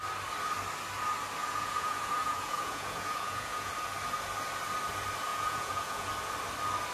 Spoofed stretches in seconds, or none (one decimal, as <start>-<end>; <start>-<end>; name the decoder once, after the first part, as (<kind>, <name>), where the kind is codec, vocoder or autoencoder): 1.4-3.7 (vocoder, Vocos); 5.3-6.1